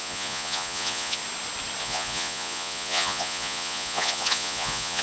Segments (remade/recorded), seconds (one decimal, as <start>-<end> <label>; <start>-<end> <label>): 0.0-1.2 remade; 1.2-1.8 recorded; 1.8-5.0 remade